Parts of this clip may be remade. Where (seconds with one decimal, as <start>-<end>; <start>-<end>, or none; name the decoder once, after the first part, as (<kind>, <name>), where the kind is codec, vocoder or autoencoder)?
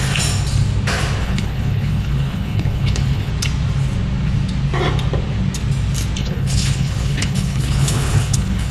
1.2-3.3 (codec, HILCodec); 6.2-8.7